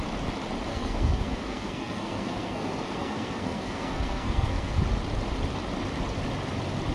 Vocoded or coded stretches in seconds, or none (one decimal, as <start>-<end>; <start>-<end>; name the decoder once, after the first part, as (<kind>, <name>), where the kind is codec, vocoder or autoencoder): 0.7-4.8 (codec, SNAC)